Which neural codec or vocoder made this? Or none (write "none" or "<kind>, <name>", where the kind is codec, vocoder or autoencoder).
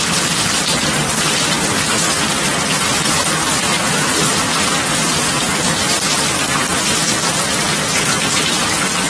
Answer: none